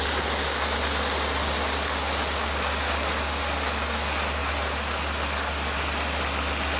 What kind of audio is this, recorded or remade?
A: recorded